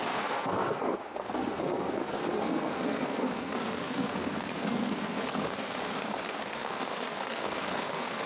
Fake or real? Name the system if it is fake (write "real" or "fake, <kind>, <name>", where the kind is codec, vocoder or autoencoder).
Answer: fake, codec, SNAC